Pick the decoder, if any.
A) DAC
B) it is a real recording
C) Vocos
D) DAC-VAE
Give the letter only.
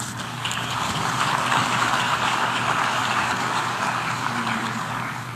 A